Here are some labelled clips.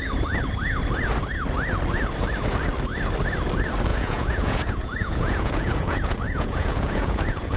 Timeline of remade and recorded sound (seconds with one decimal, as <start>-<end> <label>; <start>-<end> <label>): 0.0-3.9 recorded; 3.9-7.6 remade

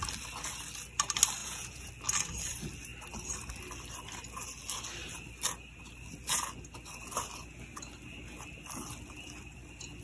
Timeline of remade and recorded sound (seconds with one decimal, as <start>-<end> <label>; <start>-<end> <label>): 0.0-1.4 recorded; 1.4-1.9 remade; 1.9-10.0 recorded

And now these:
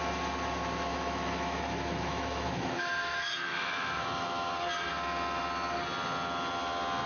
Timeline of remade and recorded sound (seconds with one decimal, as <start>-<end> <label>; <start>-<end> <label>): 0.0-0.9 recorded; 0.9-4.5 remade; 4.5-7.1 recorded

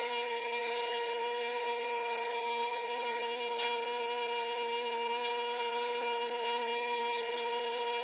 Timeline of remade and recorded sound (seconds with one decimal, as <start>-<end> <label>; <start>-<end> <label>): 0.0-8.0 remade

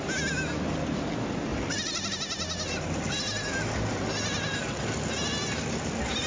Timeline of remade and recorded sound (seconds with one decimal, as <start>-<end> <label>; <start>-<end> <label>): 0.0-1.5 recorded; 1.5-2.1 remade; 2.1-6.3 recorded

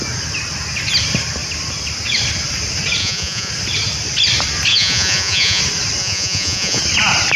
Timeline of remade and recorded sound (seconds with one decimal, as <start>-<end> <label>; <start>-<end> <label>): 0.0-3.0 recorded; 3.0-3.5 remade; 3.5-4.7 recorded; 4.7-5.6 remade; 5.6-6.0 recorded; 6.0-6.8 remade; 6.8-7.4 recorded

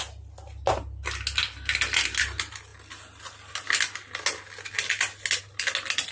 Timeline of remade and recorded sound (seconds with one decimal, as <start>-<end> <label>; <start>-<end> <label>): 0.0-6.1 recorded